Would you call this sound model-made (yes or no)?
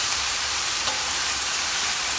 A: yes